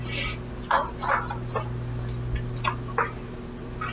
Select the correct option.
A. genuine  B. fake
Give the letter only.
A